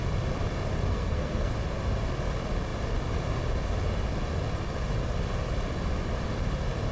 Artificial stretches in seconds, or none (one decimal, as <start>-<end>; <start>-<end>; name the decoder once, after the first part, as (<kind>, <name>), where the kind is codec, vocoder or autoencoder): 0.9-1.5 (codec, SNAC)

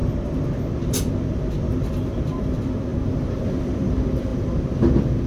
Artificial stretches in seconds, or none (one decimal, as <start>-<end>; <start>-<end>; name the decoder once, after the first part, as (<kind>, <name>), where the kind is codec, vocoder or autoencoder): none

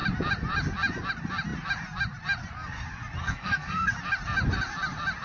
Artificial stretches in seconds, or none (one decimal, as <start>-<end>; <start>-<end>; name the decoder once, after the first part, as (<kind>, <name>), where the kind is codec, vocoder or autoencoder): 3.2-3.9 (codec, SNAC)

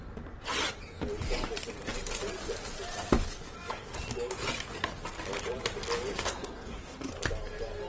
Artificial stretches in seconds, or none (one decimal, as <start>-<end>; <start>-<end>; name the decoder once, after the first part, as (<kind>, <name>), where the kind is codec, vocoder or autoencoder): 6.1-7.1 (codec, SNAC)